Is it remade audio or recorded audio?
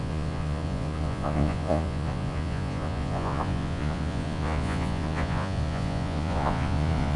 remade